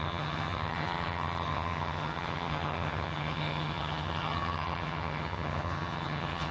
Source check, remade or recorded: remade